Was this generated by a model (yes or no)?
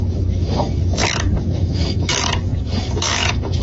yes